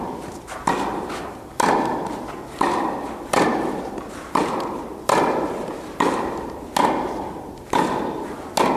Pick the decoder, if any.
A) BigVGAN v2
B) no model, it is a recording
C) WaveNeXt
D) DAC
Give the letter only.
B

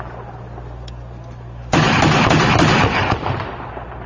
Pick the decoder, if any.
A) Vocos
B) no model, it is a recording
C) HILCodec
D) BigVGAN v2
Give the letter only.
B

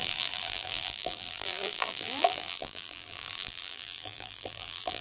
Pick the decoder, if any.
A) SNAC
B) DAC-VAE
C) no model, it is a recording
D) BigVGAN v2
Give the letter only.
D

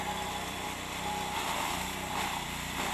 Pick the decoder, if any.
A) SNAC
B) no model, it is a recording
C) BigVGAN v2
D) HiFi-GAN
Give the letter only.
C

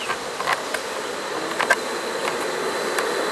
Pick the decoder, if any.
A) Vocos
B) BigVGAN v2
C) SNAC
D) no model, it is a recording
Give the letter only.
B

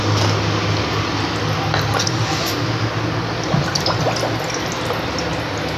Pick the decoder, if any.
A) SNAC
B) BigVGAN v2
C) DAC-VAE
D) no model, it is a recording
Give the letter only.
D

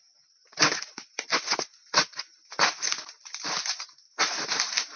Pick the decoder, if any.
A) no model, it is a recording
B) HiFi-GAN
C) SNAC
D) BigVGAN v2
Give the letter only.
A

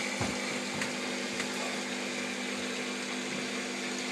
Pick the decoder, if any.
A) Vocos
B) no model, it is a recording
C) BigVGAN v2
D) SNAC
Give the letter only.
B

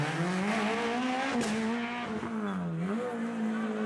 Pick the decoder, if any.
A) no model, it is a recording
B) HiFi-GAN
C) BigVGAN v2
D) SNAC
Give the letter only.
A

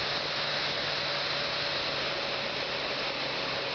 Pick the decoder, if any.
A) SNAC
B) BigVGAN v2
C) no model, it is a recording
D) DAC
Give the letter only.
C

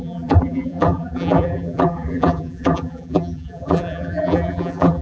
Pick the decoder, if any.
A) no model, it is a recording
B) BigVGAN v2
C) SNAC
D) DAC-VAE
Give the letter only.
B